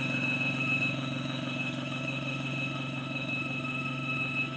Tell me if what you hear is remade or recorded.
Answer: remade